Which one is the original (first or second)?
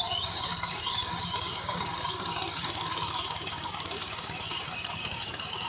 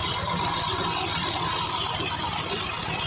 second